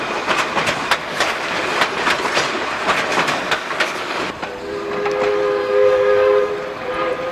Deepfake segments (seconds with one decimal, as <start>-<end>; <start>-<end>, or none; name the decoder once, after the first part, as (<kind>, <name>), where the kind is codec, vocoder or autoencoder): 1.0-1.7 (codec, DAC); 3.1-4.2; 5.6-6.5